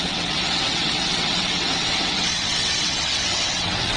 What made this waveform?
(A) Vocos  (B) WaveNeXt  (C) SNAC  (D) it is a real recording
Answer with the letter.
B